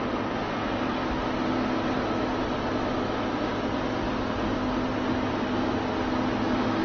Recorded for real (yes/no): yes